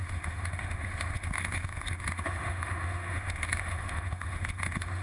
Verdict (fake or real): fake